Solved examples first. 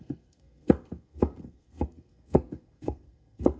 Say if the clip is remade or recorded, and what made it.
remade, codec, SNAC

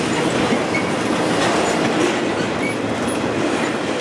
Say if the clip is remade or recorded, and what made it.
recorded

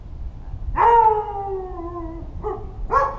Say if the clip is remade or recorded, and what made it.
recorded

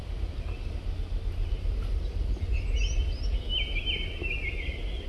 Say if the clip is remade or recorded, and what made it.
recorded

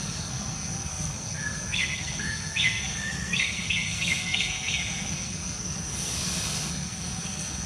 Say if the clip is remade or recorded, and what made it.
remade, codec, SNAC